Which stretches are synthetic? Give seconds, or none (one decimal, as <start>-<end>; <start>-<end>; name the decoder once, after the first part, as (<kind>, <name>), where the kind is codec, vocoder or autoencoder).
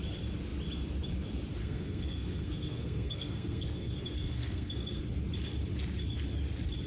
1.6-5.0 (codec, SNAC)